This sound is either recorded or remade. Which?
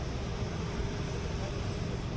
recorded